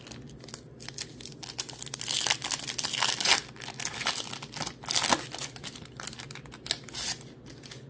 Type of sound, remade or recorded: recorded